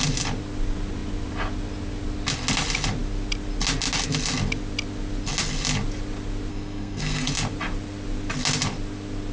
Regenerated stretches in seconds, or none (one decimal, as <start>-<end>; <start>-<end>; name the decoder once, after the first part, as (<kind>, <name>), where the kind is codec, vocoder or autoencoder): 6.5-7.3 (codec, SNAC)